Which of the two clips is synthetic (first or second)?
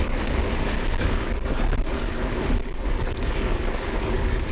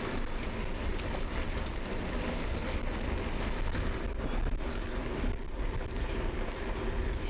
first